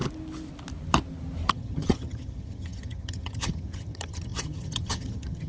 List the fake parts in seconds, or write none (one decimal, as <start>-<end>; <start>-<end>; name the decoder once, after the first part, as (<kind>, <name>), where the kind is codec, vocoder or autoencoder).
1.5-5.5 (vocoder, HiFi-GAN)